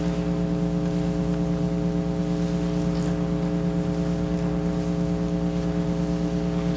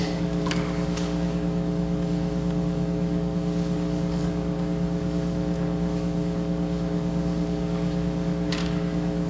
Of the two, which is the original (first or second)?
first